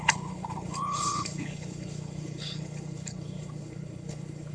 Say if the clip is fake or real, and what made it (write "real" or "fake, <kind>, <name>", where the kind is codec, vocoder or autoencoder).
fake, codec, HILCodec